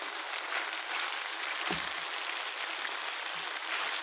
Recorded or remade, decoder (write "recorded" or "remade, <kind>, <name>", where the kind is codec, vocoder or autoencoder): recorded